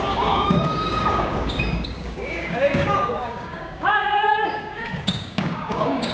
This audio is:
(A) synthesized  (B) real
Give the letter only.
A